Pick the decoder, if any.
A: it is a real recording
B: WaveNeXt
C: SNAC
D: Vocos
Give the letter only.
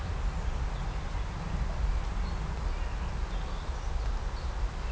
A